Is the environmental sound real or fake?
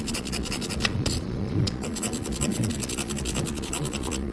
fake